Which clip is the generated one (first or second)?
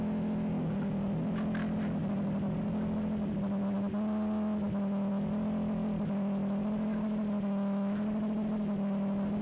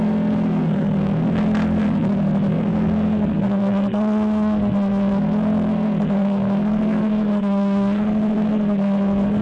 second